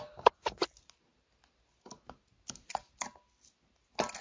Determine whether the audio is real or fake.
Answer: real